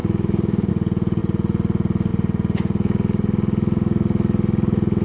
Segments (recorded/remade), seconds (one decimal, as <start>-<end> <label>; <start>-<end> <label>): 0.0-0.7 remade; 0.7-5.0 recorded